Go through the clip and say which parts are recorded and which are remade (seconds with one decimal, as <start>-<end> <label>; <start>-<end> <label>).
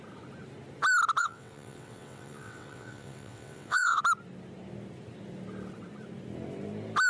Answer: 0.0-1.2 recorded; 1.2-4.0 remade; 4.0-7.1 recorded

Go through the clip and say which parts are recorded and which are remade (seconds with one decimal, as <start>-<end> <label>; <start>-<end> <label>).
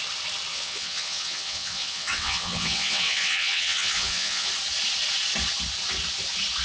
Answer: 0.0-0.5 recorded; 0.5-4.5 remade; 4.5-6.6 recorded